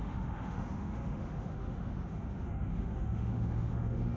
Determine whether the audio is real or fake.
fake